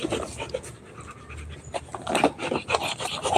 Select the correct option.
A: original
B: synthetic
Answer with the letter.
A